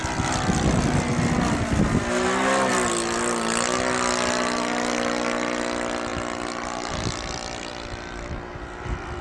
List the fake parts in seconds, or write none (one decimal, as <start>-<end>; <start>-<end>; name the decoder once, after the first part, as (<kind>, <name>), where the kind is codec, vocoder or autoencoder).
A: none